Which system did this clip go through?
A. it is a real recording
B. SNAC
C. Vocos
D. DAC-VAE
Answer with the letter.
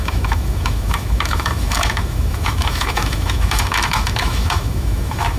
D